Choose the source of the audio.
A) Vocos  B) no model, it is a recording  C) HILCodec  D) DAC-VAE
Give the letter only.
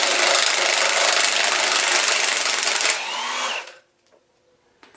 B